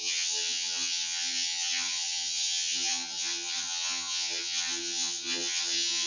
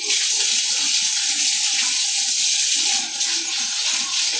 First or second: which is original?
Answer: second